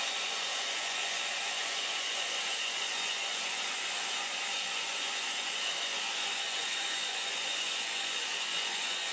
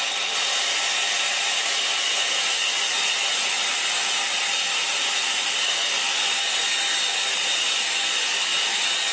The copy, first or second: first